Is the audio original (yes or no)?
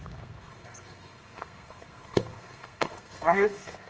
no